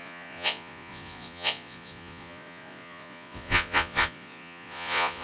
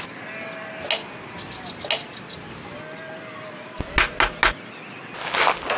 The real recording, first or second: second